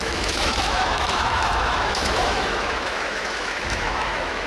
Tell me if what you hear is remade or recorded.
remade